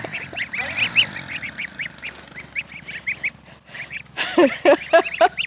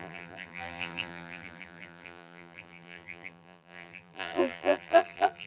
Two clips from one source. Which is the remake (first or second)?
second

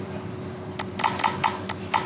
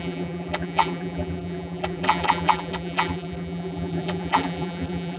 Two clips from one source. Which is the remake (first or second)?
second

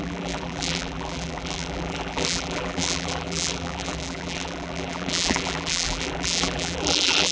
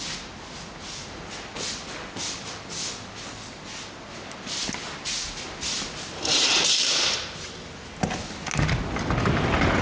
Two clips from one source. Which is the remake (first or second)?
first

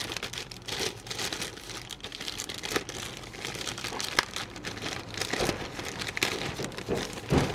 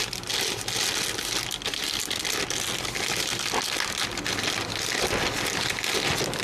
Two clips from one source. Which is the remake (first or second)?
first